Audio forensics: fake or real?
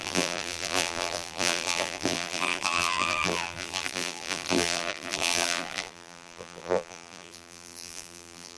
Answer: fake